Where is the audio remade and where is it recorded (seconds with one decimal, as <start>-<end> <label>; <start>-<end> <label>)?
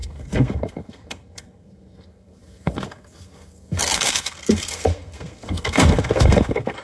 0.0-6.8 remade